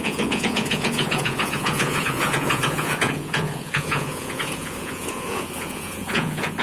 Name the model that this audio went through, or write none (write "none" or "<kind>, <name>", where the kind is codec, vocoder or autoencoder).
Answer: vocoder, Vocos